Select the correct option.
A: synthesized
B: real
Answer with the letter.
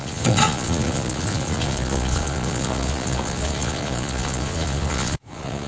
A